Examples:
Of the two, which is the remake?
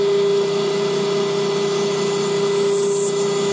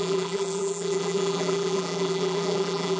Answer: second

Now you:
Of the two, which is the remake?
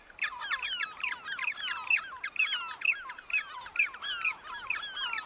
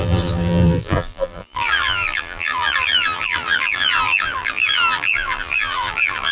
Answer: second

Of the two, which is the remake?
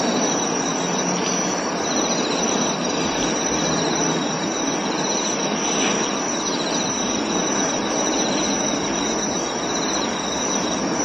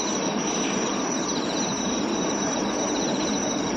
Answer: second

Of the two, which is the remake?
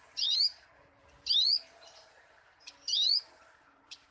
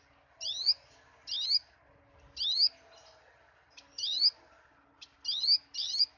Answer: first